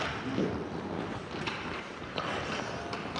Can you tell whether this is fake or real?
real